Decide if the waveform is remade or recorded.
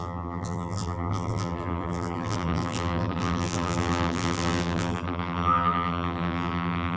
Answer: remade